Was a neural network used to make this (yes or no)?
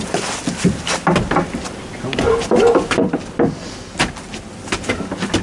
no